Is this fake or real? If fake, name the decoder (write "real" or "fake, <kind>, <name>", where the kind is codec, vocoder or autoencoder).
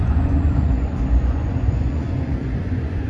fake, vocoder, Vocos